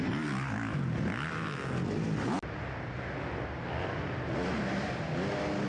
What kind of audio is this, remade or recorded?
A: recorded